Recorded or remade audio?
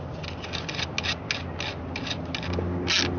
recorded